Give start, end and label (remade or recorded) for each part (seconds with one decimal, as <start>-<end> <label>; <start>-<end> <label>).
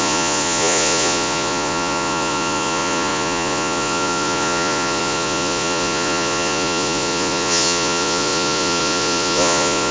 0.0-9.9 remade